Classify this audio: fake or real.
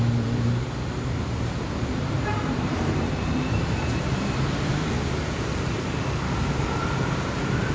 fake